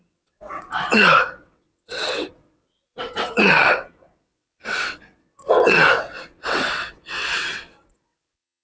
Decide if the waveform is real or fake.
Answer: fake